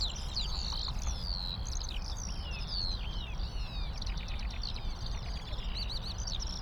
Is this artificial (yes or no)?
no